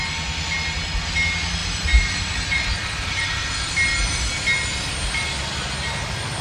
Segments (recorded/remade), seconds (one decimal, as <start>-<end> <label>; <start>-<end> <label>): 0.0-1.6 recorded; 1.6-3.7 remade; 3.7-6.4 recorded